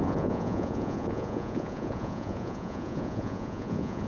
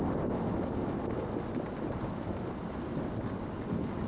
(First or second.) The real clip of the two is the second